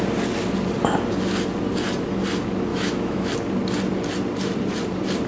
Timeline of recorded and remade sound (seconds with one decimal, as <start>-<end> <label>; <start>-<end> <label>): 0.0-2.7 recorded; 2.7-3.3 remade; 3.3-5.3 recorded